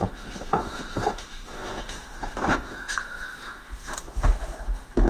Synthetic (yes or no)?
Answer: yes